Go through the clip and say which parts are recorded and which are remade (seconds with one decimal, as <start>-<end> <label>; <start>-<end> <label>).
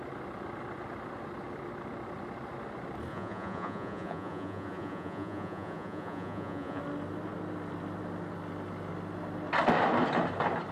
0.0-3.1 recorded; 3.1-6.8 remade; 6.8-10.7 recorded